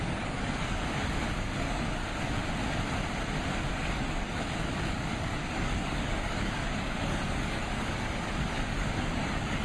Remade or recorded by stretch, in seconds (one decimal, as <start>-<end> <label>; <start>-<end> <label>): 0.0-2.0 remade; 2.0-3.7 recorded; 3.7-9.6 remade